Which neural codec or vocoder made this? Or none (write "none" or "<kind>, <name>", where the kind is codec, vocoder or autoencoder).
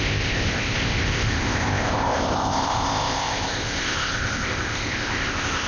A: codec, ZipCodec